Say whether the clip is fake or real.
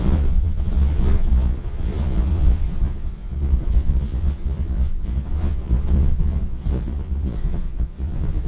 fake